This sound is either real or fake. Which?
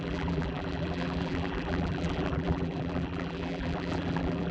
fake